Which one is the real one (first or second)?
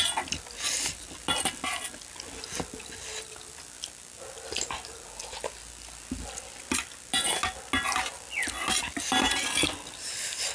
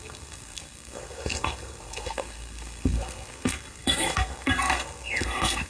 first